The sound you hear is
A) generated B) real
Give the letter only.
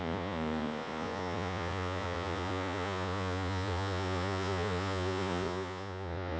A